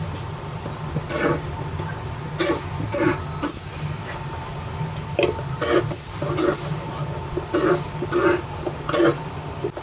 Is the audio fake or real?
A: real